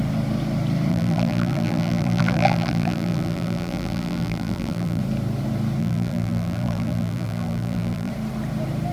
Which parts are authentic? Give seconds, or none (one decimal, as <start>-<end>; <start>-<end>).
0.0-0.9; 5.0-5.8; 8.1-8.9